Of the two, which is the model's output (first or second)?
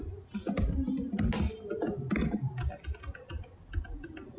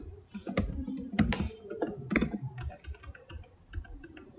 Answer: second